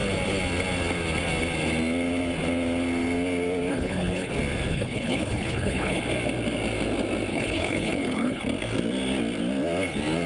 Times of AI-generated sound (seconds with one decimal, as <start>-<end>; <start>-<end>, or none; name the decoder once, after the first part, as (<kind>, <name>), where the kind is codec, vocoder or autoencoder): 3.7-4.3 (codec, HILCodec); 4.7-6.0; 7.3-8.4